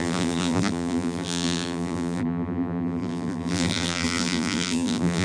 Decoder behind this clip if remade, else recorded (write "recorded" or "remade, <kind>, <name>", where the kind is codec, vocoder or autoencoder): remade, vocoder, BigVGAN v2